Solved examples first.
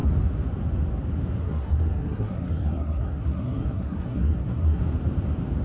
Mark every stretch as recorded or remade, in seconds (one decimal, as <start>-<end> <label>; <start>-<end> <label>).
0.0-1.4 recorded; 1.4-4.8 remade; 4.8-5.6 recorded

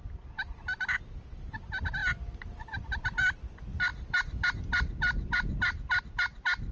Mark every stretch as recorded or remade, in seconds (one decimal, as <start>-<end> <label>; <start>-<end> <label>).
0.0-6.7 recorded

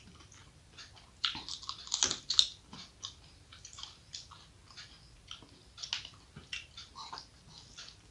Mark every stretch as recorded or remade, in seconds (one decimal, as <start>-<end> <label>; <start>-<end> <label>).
0.0-8.1 recorded

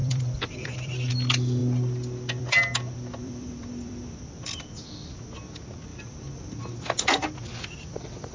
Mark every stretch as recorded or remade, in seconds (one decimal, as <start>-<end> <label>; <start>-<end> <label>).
0.0-1.1 remade; 1.1-3.2 recorded; 3.2-4.2 remade; 4.2-5.9 recorded; 5.9-6.6 remade; 6.6-8.3 recorded

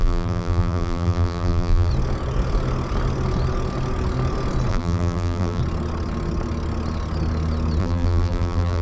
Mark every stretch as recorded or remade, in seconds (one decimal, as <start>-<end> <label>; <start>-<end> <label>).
0.0-1.9 remade; 1.9-4.7 recorded; 4.7-5.6 remade; 5.6-7.8 recorded; 7.8-8.8 remade

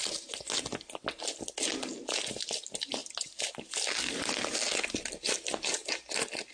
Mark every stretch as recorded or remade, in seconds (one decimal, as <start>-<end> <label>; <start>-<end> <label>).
0.0-6.5 recorded